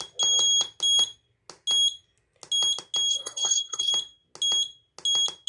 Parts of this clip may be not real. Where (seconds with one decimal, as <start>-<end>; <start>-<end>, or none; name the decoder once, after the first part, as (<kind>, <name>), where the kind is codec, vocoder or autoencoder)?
3.1-3.9 (codec, SNAC)